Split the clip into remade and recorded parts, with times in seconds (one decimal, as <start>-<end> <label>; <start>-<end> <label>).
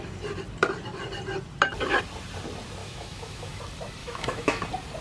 0.0-2.8 recorded; 2.8-3.6 remade; 3.6-4.0 recorded; 4.0-4.6 remade; 4.6-5.0 recorded